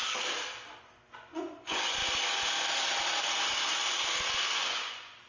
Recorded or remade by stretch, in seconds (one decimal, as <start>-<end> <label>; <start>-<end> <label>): 0.0-0.8 recorded; 0.8-2.0 remade; 2.0-4.5 recorded; 4.5-5.3 remade